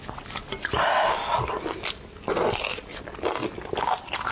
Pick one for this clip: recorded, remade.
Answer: recorded